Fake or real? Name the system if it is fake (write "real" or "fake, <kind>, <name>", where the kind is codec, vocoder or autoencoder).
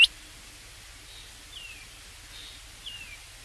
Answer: real